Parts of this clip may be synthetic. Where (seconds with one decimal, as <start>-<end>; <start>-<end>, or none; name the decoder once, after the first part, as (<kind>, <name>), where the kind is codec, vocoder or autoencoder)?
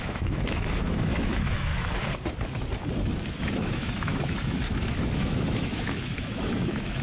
0.0-1.7 (autoencoder, DAC-VAE); 3.5-7.0